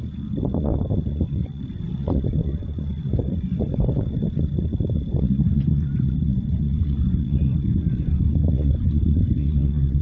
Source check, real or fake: fake